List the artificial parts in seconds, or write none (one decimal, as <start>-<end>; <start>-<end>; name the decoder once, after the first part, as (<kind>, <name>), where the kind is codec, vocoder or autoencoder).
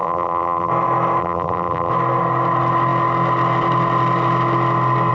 0.0-0.7 (vocoder, BigVGAN v2); 1.2-1.9